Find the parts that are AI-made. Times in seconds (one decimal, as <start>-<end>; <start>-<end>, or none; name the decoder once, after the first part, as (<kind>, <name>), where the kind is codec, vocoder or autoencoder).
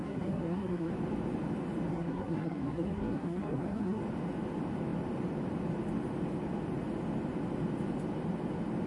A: 0.0-0.9 (codec, SNAC); 1.9-4.0